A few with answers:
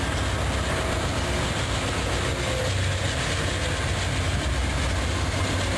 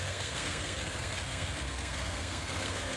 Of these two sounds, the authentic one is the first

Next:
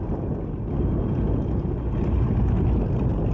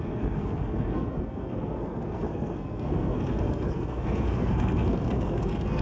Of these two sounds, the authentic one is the first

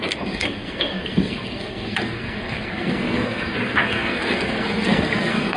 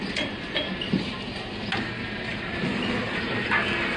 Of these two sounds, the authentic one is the second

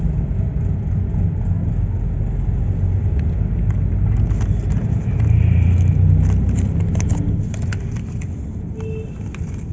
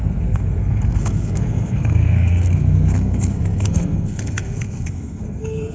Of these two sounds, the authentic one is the first